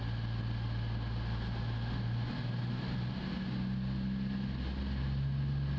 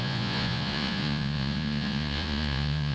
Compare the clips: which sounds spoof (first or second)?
second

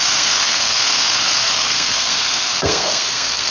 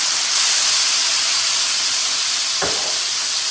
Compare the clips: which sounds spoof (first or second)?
first